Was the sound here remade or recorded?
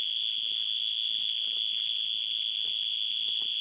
remade